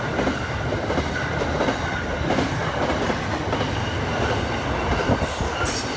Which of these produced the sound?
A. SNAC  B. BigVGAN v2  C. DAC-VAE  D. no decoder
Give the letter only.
D